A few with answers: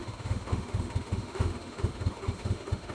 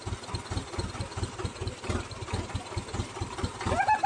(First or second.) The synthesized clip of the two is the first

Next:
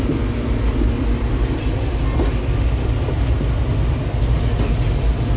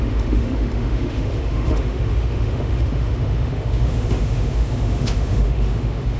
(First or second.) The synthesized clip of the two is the second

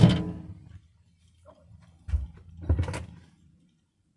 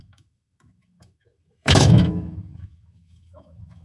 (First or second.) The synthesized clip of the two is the second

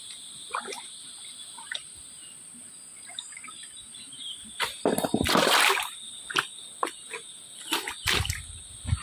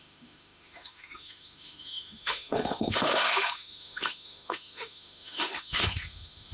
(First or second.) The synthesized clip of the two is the second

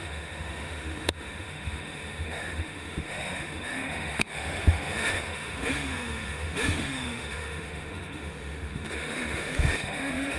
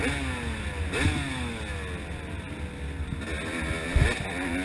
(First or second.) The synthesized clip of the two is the first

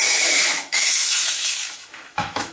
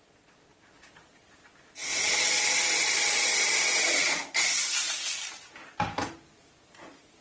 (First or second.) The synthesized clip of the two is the first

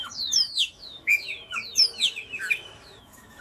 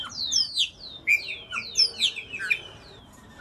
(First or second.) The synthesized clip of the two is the first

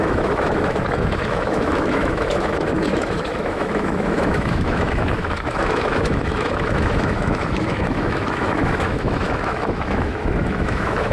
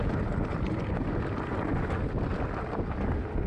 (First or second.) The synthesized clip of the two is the first